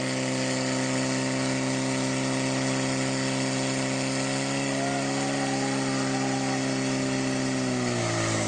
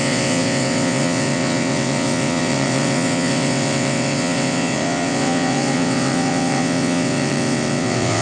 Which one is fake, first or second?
second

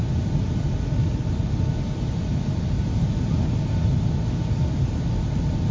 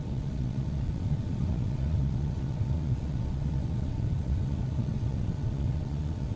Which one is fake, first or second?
second